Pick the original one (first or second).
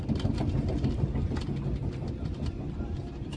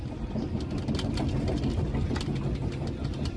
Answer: second